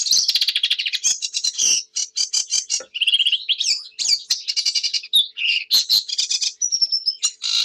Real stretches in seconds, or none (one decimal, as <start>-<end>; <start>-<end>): 0.0-1.1; 1.7-7.6